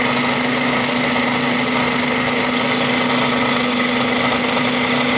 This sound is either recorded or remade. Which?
recorded